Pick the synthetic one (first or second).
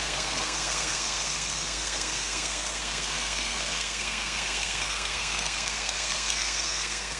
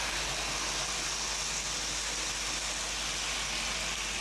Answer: first